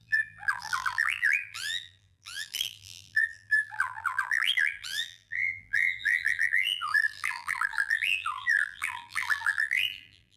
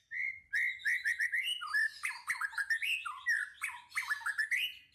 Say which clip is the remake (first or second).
first